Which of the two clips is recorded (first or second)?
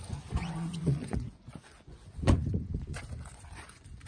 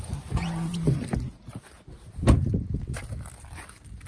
second